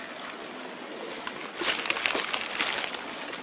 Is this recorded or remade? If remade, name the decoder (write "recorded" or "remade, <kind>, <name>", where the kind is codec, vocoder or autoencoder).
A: recorded